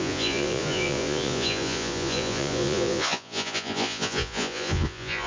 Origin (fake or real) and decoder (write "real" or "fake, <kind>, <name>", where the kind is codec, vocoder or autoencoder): fake, vocoder, Vocos